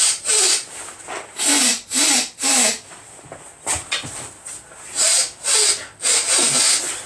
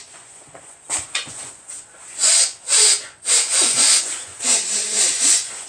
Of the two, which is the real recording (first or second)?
first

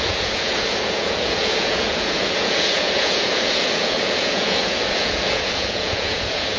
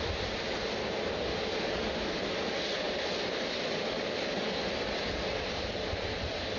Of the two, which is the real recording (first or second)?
second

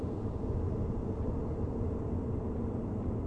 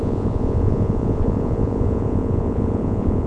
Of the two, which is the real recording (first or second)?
first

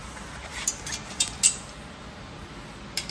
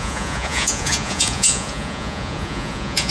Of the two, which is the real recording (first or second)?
first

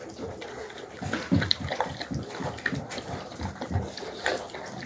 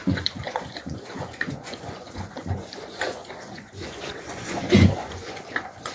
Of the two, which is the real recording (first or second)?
first